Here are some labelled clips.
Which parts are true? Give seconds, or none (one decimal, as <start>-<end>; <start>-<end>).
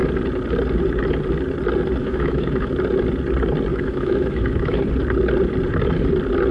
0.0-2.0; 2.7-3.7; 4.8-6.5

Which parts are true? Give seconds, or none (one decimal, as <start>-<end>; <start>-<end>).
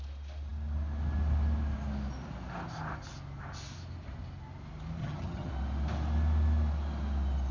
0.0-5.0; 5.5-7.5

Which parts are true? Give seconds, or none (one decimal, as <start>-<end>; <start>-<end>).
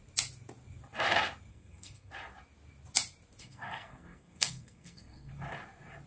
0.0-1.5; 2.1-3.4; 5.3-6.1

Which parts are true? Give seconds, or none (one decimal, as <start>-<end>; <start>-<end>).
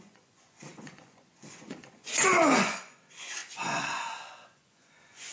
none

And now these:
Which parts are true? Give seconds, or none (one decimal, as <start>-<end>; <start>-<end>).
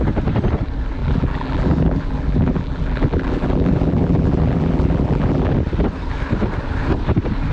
0.0-1.0; 5.5-7.5